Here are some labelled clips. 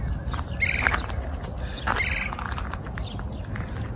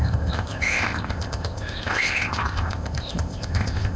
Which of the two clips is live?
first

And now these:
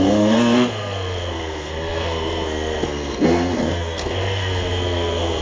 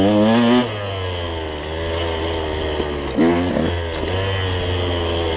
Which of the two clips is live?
second